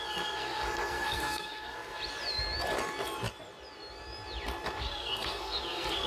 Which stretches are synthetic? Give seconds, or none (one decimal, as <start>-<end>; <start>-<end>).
0.0-2.0; 4.8-6.1